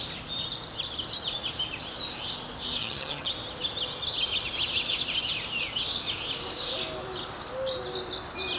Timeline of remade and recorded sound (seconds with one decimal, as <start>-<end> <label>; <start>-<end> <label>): 0.0-2.8 recorded; 2.8-3.3 remade; 3.3-8.6 recorded